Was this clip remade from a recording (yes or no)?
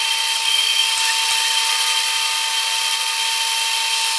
no